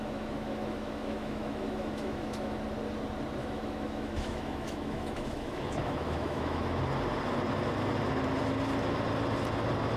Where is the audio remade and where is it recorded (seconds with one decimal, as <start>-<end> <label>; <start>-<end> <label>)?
0.0-2.6 remade; 2.6-3.4 recorded; 3.4-6.8 remade; 6.8-10.0 recorded